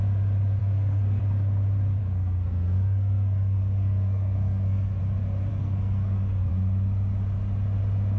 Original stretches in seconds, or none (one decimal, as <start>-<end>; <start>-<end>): 0.0-0.6; 1.2-2.0; 5.0-5.5; 6.5-8.2